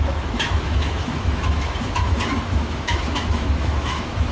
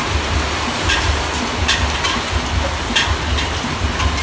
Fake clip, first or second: first